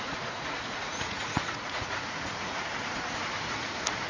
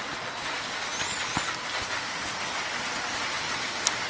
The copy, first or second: first